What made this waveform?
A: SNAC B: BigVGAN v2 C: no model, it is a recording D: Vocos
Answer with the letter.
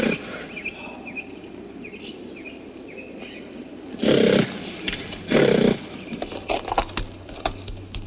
C